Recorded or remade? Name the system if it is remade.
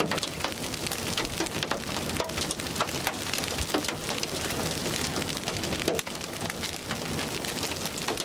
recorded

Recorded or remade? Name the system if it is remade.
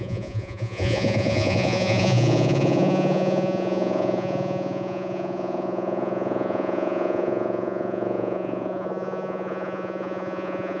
remade, vocoder, Vocos